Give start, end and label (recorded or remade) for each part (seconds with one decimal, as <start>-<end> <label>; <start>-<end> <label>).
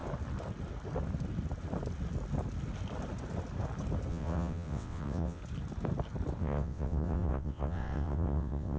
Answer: 0.0-4.1 recorded; 4.1-5.4 remade; 5.4-6.4 recorded; 6.4-8.8 remade